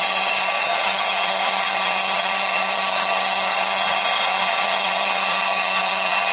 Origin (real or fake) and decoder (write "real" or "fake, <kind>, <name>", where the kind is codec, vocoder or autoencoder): fake, vocoder, HiFi-GAN